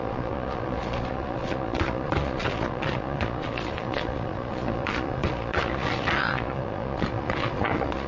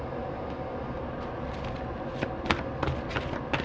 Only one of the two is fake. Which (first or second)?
first